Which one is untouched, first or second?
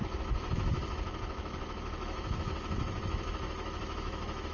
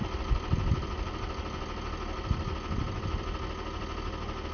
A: second